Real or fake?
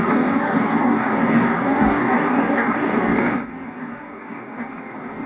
fake